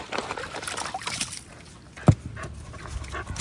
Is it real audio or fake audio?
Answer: real